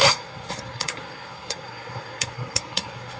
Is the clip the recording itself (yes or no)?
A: no